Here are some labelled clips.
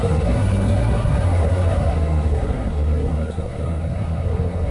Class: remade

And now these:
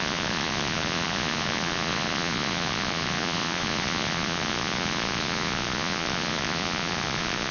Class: remade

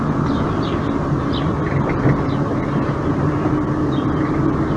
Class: recorded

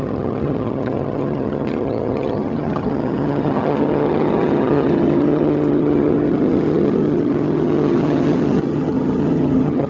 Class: remade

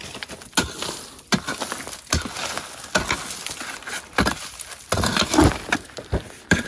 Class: recorded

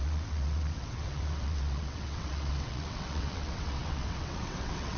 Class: remade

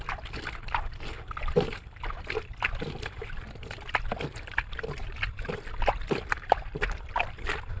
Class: recorded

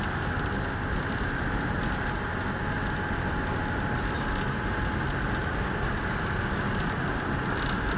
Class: recorded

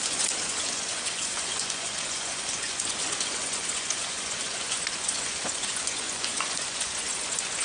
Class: remade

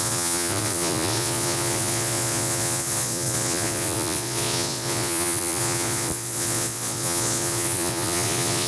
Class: remade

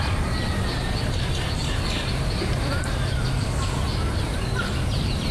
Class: recorded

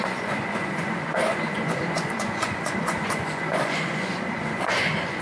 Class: remade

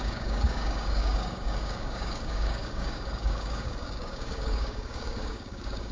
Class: remade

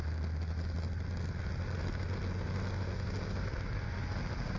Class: recorded